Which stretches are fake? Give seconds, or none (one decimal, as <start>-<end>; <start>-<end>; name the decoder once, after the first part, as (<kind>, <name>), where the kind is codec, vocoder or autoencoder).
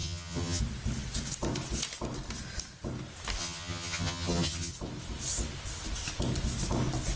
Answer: 0.0-0.6 (vocoder, HiFi-GAN); 3.4-4.7